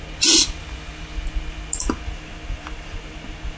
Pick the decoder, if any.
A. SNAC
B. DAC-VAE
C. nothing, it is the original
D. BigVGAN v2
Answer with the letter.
C